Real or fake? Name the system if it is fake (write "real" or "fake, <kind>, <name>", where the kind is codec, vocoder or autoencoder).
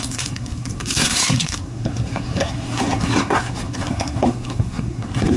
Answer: fake, codec, SNAC